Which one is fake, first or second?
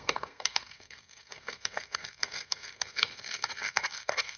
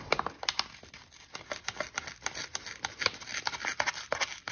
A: first